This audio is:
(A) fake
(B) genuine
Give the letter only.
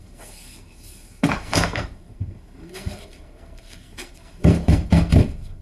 A